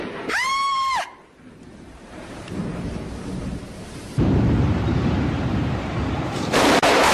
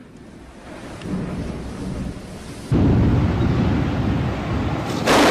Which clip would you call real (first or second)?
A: second